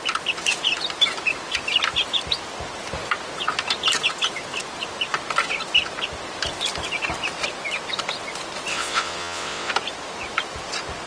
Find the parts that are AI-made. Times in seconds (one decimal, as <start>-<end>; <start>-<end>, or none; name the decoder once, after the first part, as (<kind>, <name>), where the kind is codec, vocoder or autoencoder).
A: 8.7-9.7 (vocoder, WaveNeXt)